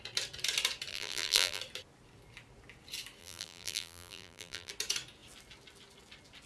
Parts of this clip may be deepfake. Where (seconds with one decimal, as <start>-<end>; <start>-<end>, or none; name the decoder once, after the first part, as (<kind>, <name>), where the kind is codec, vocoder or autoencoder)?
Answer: 0.9-1.6 (vocoder, BigVGAN v2); 3.2-4.7